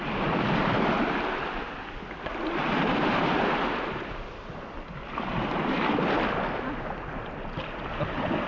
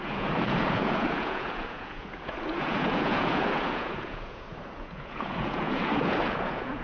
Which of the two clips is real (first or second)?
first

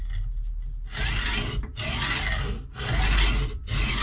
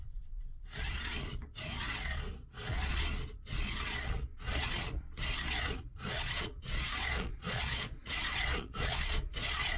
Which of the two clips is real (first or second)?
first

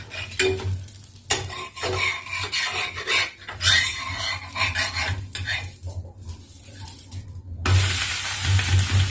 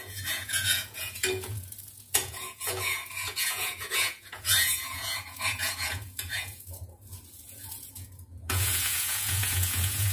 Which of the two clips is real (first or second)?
first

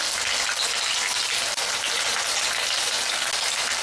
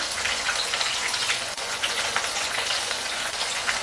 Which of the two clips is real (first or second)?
first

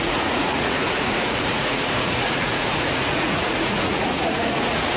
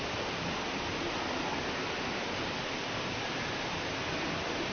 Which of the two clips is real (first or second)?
second